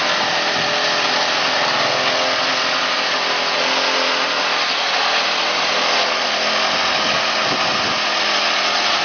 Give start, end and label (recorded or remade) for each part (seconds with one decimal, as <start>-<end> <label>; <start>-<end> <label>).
0.0-9.0 recorded